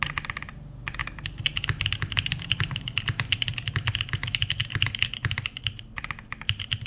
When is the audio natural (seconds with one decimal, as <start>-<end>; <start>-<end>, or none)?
0.0-6.9